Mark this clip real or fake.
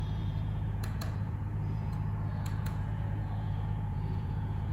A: fake